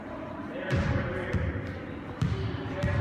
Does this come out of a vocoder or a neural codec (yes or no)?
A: no